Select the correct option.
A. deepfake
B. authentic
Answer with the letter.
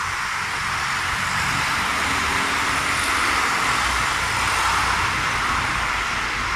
B